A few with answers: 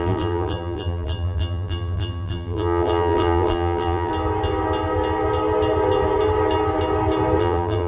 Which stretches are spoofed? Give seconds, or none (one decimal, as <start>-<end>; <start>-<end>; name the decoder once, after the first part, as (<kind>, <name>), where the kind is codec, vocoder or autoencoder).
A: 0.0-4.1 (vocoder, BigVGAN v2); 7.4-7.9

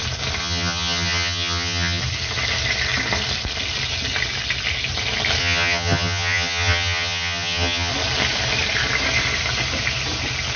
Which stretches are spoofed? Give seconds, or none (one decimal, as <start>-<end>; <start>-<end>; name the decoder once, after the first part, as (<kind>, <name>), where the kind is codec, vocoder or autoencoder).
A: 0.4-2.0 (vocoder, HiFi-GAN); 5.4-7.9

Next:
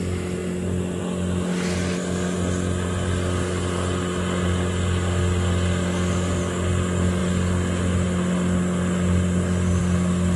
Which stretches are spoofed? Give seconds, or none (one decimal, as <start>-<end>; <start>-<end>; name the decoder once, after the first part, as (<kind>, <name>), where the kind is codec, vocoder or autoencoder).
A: none

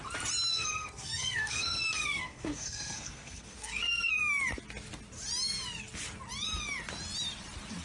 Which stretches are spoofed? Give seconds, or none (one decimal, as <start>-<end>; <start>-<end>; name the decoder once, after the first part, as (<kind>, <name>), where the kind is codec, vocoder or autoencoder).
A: 0.5-4.1 (codec, SNAC)

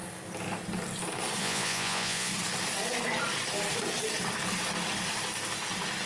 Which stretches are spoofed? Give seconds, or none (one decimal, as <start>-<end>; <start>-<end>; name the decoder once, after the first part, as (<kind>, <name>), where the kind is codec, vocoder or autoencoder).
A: 1.4-2.3 (vocoder, Vocos)

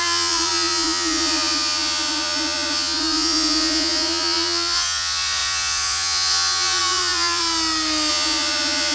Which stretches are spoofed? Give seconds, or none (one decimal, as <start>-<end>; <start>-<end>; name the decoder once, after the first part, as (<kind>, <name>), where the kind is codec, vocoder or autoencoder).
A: 0.0-7.4 (vocoder, Vocos); 8.1-8.9

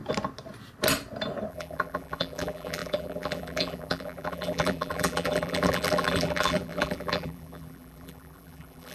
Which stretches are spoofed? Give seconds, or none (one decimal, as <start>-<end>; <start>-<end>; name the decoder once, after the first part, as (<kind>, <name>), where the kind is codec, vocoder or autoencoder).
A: 1.5-8.9 (vocoder, BigVGAN v2)

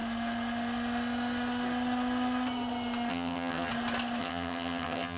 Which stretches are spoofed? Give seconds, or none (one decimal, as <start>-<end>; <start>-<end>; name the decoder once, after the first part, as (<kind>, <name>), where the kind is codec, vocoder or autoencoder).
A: 3.1-3.7 (vocoder, HiFi-GAN); 4.2-5.2